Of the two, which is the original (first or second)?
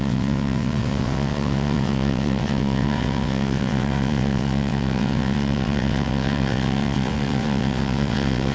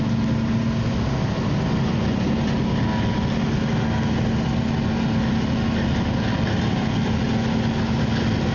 second